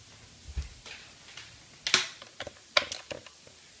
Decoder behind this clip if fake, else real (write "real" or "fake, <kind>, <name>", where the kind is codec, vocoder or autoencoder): real